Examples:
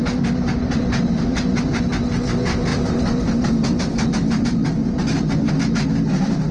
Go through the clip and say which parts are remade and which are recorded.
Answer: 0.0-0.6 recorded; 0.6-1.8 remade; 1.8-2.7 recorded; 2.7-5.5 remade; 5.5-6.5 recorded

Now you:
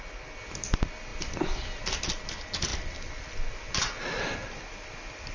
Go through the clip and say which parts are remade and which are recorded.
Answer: 0.0-5.3 recorded

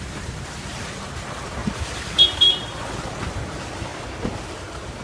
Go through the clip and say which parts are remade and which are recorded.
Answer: 0.0-5.0 recorded

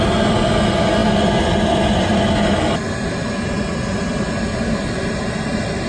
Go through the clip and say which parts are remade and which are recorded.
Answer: 0.0-5.9 recorded

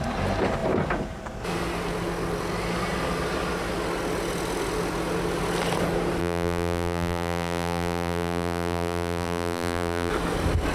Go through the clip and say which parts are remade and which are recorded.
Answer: 0.0-6.2 recorded; 6.2-10.1 remade; 10.1-10.7 recorded